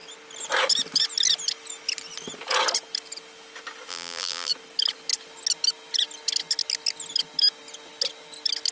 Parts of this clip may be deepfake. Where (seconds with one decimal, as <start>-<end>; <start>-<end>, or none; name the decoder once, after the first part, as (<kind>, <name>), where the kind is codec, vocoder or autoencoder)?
3.9-4.5 (vocoder, BigVGAN v2)

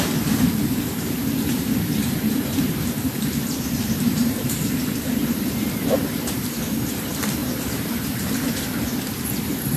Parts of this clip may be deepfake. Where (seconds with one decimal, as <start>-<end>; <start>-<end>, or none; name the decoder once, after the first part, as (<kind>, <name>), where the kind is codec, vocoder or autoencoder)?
0.0-9.8 (vocoder, BigVGAN v2)

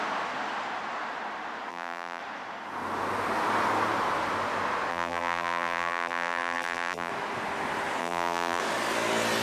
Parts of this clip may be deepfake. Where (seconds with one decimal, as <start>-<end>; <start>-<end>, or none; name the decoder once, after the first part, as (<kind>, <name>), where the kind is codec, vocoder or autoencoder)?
1.7-2.2 (vocoder, BigVGAN v2); 4.9-7.1; 8.0-8.6

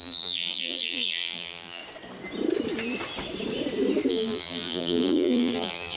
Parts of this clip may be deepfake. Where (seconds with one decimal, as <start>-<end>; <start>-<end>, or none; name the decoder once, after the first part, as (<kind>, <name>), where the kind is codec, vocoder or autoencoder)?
0.0-1.8 (vocoder, BigVGAN v2); 4.1-6.0

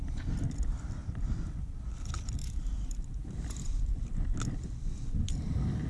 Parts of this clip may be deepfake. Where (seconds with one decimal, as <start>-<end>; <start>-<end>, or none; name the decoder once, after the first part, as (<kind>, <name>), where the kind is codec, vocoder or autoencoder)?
2.4-3.4 (vocoder, BigVGAN v2)

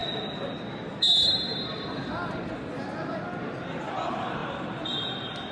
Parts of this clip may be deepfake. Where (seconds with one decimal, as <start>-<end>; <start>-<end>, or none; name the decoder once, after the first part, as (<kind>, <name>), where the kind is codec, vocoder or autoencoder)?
1.0-1.5 (vocoder, BigVGAN v2); 3.8-5.5

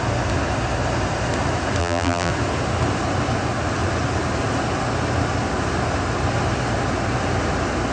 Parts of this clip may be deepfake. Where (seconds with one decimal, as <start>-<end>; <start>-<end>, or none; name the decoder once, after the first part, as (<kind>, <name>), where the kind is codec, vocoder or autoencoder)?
1.8-2.3 (vocoder, BigVGAN v2)

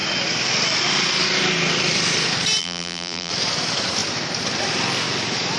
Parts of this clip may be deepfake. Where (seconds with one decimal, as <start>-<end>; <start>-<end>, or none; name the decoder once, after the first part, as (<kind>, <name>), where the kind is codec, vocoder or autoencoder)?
2.6-3.3 (vocoder, BigVGAN v2)